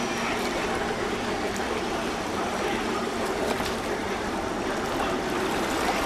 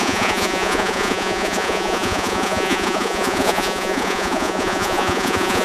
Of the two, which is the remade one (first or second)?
second